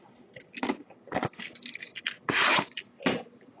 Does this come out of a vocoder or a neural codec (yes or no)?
no